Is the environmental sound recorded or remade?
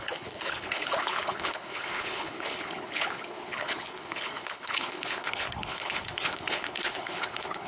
remade